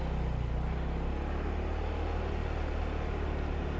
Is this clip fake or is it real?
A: real